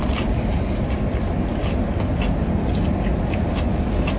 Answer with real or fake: real